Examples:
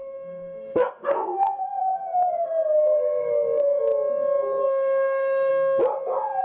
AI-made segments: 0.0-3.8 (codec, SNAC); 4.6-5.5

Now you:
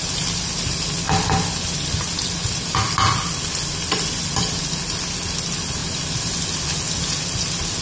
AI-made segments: none

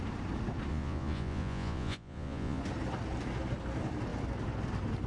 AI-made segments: 0.7-2.6 (vocoder, Vocos)

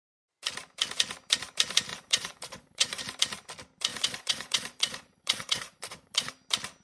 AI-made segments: 1.9-3.0 (vocoder, Vocos); 3.9-6.3

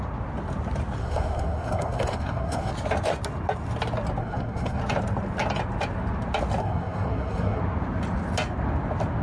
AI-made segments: 1.0-2.7 (codec, SNAC); 4.2-4.8; 6.6-7.6

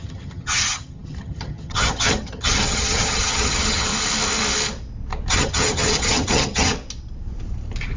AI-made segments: 0.0-3.9 (vocoder, HiFi-GAN); 5.3-6.7